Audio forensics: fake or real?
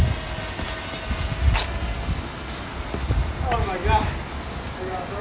real